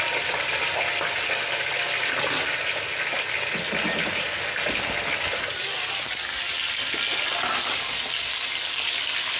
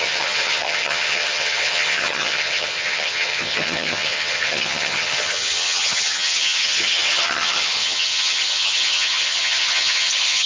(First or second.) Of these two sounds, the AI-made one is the second